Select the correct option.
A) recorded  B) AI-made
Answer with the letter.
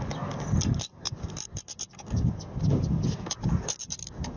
A